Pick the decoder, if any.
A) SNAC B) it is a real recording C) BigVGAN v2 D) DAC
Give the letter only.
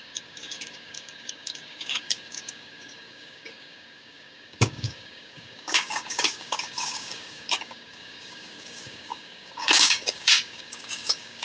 D